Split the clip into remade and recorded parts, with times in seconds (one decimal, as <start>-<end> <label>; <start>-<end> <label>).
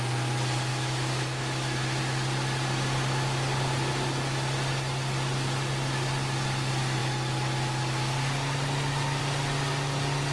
0.0-0.7 recorded; 0.7-2.0 remade; 2.0-10.3 recorded